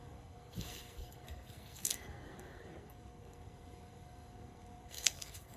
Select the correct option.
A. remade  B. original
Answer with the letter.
A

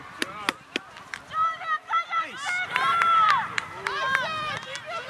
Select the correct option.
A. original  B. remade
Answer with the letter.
B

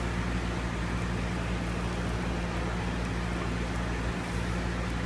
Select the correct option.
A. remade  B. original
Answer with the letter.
B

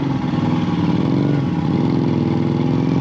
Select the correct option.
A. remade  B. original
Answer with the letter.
B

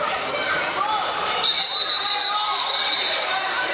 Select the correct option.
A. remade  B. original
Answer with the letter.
A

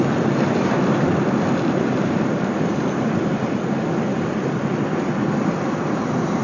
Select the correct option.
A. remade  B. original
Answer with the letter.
A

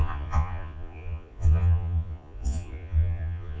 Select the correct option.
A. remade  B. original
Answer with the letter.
A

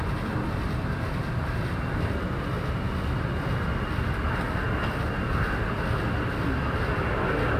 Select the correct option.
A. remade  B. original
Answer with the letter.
B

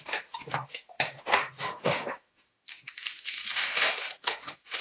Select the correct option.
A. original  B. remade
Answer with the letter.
B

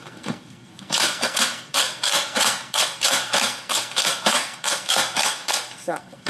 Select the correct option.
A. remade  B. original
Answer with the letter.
A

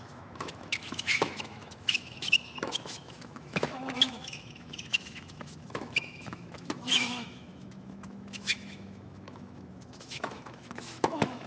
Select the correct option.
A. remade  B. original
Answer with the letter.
A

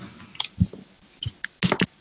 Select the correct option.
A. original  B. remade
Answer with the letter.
A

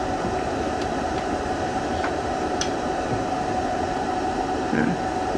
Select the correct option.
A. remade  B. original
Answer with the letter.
A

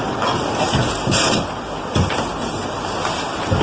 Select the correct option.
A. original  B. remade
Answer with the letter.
A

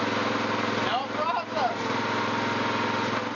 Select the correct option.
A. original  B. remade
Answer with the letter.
A